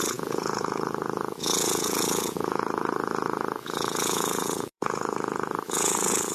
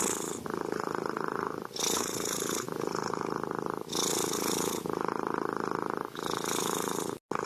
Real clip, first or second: second